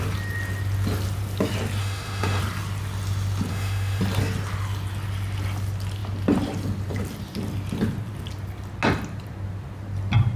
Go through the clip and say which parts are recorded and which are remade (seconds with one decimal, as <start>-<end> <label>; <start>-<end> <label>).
0.0-1.8 recorded; 1.8-2.4 remade; 2.4-3.5 recorded; 3.5-4.0 remade; 4.0-10.4 recorded